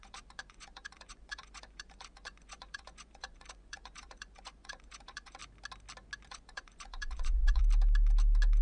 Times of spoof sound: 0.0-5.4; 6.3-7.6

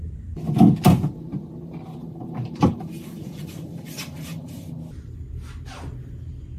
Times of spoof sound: 2.0-4.7

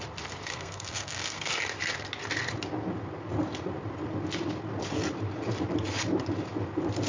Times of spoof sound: 0.5-1.5

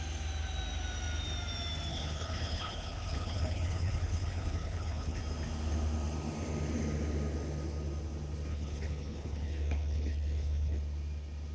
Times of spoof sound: 1.9-5.2; 8.5-10.8